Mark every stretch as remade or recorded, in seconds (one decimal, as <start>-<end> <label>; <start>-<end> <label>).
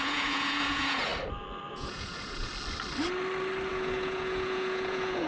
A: 0.0-1.1 remade; 1.1-1.7 recorded; 1.7-2.5 remade; 2.5-3.7 recorded; 3.7-5.3 remade